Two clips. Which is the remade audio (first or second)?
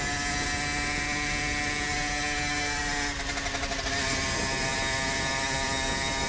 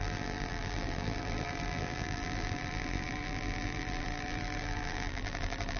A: second